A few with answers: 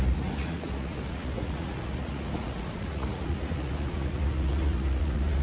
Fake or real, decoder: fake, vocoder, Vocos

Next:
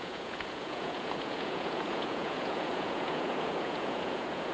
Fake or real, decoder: fake, vocoder, Vocos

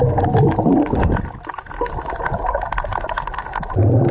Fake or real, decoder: real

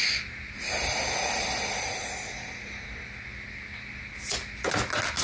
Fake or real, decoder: real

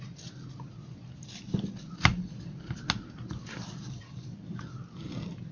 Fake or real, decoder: real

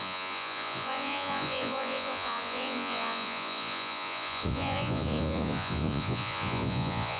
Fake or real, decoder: fake, vocoder, Vocos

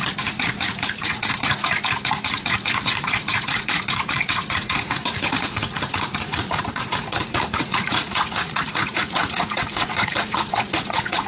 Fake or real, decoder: fake, vocoder, Vocos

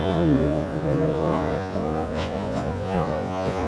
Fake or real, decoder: fake, vocoder, Vocos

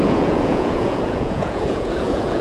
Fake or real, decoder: fake, vocoder, Vocos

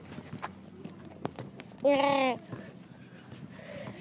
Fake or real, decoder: real